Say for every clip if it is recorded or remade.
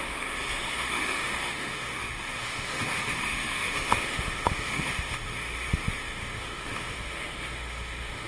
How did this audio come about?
remade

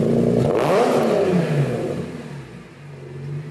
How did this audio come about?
recorded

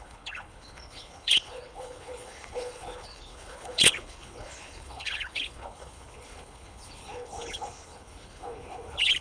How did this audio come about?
remade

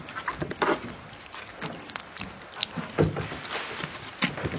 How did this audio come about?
recorded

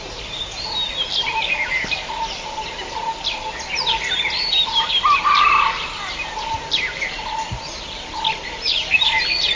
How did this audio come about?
recorded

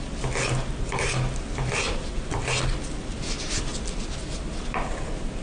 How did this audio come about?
recorded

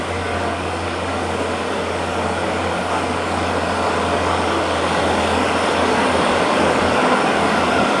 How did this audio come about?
remade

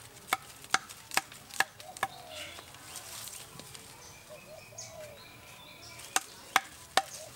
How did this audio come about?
recorded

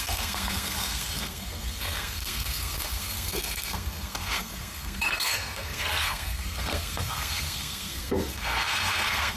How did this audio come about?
remade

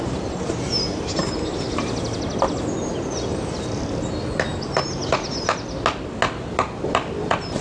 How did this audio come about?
recorded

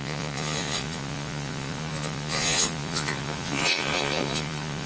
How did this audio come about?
remade